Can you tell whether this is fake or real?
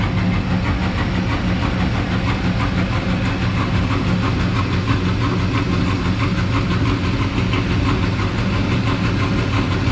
real